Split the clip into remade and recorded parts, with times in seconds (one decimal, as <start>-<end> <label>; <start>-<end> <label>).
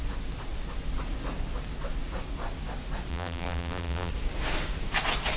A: 0.0-3.1 recorded; 3.1-4.1 remade; 4.1-5.4 recorded